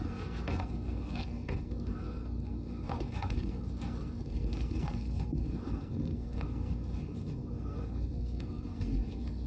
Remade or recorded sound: remade